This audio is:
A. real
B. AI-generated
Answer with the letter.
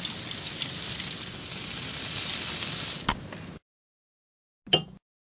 A